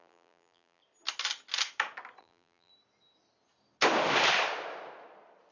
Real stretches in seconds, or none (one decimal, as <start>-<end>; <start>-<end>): 0.8-2.2; 2.7-5.5